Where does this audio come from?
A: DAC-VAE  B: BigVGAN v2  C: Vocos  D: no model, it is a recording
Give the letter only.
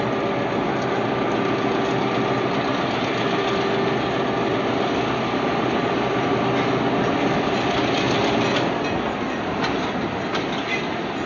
D